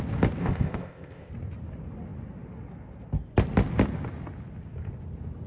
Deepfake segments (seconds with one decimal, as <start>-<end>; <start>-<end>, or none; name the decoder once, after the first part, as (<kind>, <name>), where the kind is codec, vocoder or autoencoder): 0.4-1.3 (codec, ZipCodec)